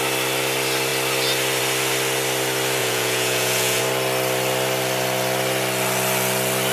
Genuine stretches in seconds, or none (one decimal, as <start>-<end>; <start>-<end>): 0.0-2.8; 3.8-6.7